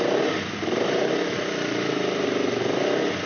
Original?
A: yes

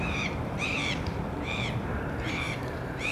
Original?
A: no